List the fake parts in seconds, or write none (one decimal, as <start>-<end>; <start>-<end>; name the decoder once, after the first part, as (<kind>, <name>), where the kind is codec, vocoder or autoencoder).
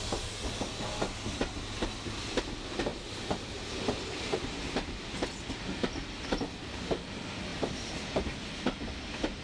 2.9-5.5 (vocoder, BigVGAN v2); 7.5-8.2